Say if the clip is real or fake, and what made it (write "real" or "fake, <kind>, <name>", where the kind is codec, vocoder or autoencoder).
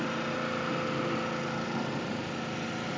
real